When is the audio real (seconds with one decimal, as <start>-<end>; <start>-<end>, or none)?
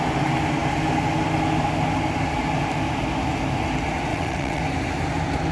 0.0-4.1; 4.6-5.5